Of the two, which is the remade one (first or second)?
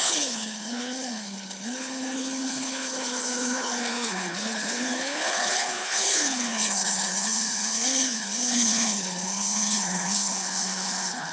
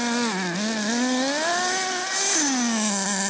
first